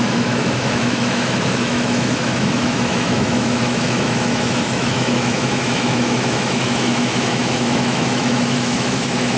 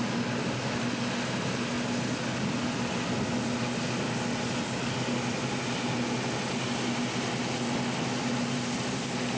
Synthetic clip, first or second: first